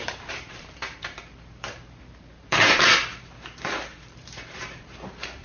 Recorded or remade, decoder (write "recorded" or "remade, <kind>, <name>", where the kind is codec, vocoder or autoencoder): remade, vocoder, BigVGAN v2